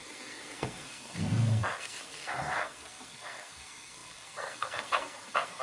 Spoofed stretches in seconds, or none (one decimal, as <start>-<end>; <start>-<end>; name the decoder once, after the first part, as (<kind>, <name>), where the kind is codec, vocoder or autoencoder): 0.0-5.6 (codec, SNAC)